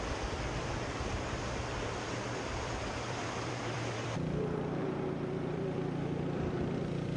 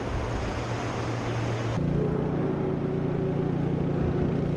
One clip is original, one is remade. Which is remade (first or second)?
first